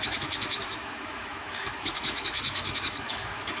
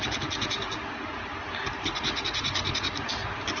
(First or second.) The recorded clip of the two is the second